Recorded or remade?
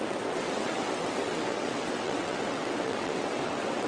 remade